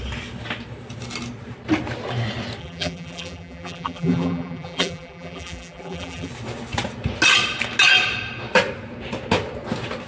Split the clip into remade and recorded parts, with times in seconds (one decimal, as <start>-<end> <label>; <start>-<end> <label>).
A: 0.0-2.6 recorded; 2.6-6.3 remade; 6.3-10.1 recorded